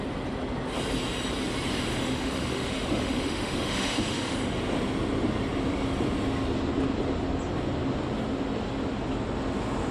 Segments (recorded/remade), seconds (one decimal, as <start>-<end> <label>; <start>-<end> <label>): 0.0-1.9 recorded; 1.9-4.6 remade; 4.6-9.9 recorded